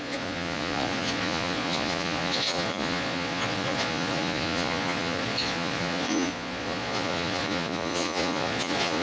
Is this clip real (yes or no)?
no